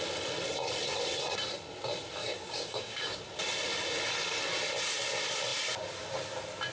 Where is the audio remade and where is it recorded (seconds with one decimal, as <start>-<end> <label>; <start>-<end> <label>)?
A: 0.0-2.2 recorded; 2.2-3.2 remade; 3.2-6.7 recorded